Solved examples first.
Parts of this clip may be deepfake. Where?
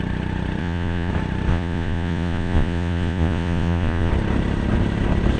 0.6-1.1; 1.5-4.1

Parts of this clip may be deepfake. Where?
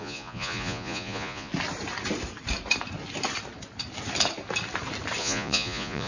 0.0-1.5; 5.2-6.1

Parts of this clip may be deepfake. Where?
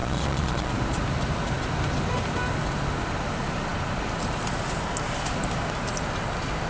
0.0-0.7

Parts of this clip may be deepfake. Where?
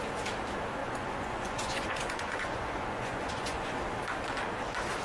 0.8-3.8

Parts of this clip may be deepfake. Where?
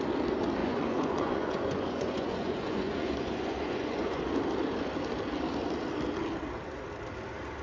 0.6-4.3